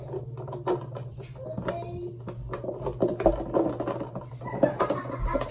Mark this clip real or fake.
real